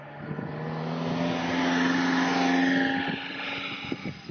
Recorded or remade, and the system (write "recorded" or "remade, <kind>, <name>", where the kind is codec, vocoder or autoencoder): recorded